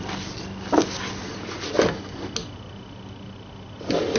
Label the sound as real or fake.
real